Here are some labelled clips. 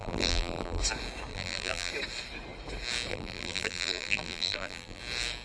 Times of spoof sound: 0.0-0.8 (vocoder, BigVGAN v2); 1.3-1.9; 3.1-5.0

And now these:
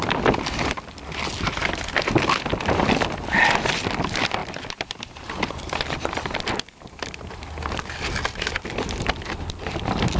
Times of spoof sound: 4.4-6.1 (vocoder, BigVGAN v2)

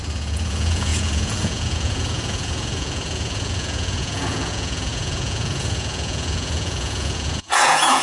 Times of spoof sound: 0.0-8.0 (vocoder, Vocos)

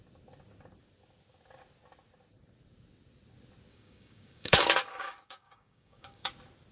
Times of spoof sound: 3.7-6.3 (codec, DAC)

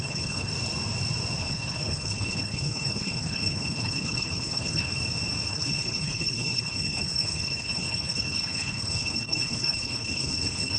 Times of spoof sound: 0.0-0.5 (codec, HILCodec); 1.4-4.9; 5.5-10.8

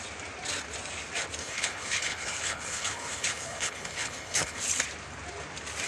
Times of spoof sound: 1.4-4.6 (codec, HILCodec)

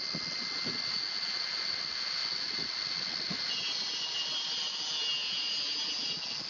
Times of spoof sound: none